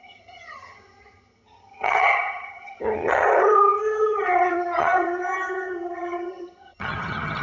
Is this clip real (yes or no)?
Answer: no